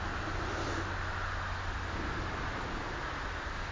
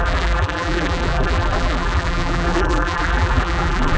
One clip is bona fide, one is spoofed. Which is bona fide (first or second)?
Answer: first